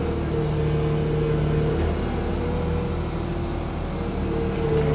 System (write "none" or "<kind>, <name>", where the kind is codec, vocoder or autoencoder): none